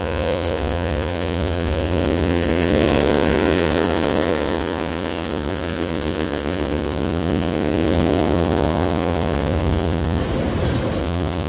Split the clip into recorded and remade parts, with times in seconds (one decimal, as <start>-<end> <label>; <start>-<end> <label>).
0.0-10.2 remade; 10.2-11.0 recorded; 11.0-11.5 remade